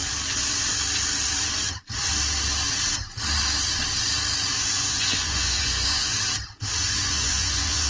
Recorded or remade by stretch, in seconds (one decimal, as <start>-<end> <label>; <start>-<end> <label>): 0.0-4.7 recorded; 4.7-6.1 remade; 6.1-6.9 recorded; 6.9-7.9 remade